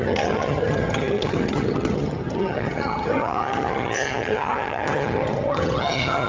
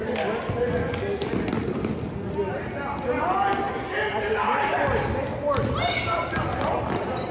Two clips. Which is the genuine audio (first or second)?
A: second